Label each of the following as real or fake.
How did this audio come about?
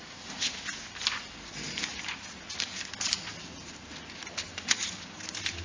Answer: real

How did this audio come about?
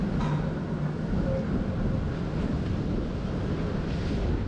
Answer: real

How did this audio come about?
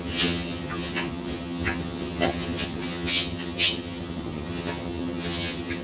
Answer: fake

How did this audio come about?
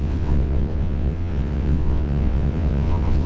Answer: fake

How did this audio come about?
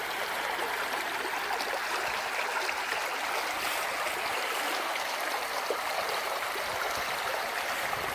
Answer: real